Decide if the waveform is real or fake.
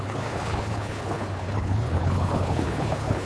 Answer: fake